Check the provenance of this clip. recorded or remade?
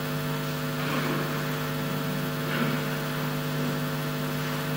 recorded